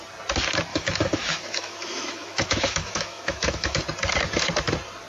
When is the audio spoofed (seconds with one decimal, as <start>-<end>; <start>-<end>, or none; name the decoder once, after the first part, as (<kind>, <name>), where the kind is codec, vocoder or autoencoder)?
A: 0.7-3.8 (autoencoder, DAC-VAE)